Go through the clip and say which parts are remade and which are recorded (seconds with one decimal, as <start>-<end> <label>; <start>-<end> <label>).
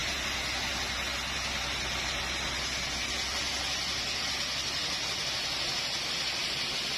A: 0.0-7.0 recorded